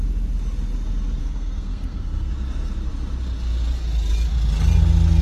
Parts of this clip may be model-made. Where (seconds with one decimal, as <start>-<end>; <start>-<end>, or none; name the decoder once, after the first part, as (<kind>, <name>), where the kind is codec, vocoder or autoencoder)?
1.2-2.3 (codec, SNAC)